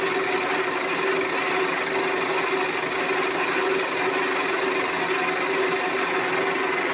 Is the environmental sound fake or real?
real